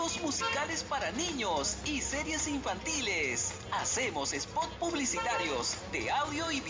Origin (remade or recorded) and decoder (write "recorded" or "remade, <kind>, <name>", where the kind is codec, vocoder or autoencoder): recorded